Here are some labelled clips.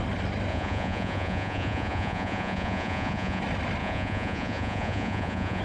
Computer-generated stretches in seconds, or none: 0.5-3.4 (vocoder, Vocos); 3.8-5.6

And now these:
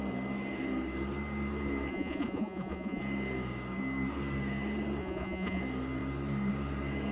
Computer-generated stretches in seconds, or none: 1.9-3.0 (vocoder, Vocos); 5.0-5.6

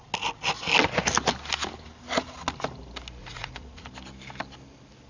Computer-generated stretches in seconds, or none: 3.2-3.9 (vocoder, Vocos)

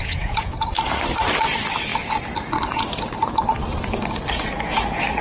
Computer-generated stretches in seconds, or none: 0.0-0.7 (vocoder, Vocos)

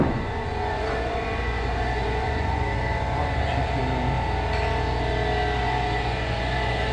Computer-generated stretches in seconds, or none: 0.0-3.8 (vocoder, Vocos); 5.6-6.9

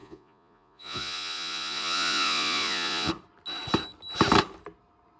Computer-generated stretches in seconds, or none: 0.0-3.1 (vocoder, Vocos)

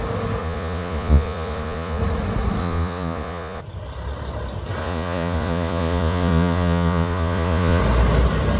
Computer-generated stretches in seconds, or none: 0.4-2.0 (vocoder, Vocos); 2.6-3.6; 4.8-7.8